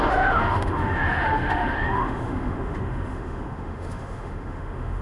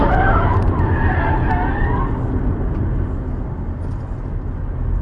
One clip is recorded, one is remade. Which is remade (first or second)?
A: first